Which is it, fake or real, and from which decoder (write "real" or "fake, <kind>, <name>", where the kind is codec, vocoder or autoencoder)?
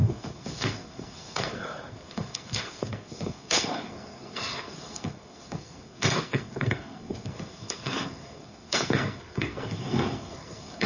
fake, codec, SNAC